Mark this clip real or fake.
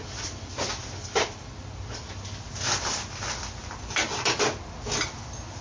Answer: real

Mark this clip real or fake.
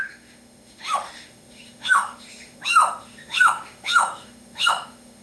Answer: fake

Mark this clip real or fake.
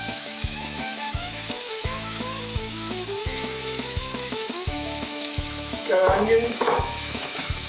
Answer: fake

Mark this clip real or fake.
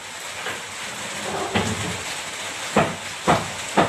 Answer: real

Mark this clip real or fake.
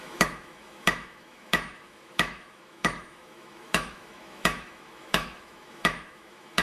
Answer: fake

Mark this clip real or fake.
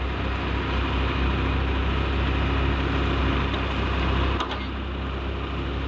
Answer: real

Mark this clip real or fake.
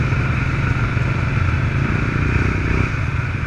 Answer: real